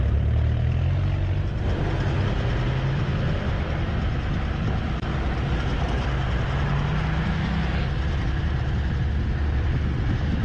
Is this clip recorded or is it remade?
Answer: recorded